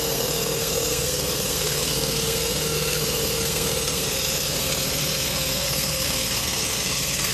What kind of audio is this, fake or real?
fake